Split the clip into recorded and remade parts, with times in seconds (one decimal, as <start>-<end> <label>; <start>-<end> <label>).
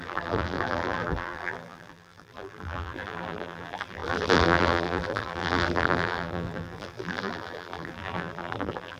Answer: 0.0-9.0 remade